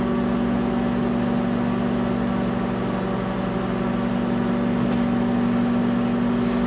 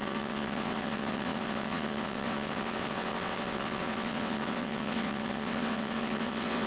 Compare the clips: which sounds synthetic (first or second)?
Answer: second